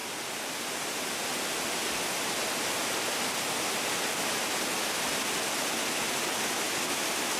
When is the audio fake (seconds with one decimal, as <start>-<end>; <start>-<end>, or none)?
none